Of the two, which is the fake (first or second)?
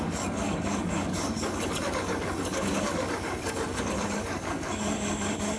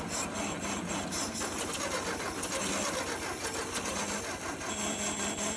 first